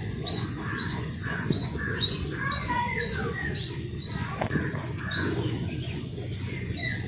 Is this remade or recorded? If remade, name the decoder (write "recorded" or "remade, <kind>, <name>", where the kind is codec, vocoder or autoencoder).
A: remade, vocoder, Vocos